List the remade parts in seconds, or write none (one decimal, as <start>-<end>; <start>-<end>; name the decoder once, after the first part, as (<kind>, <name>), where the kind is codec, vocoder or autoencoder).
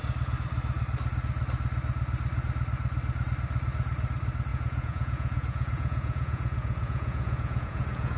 4.5-8.2 (vocoder, Vocos)